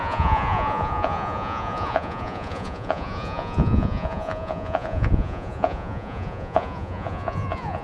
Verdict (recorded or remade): remade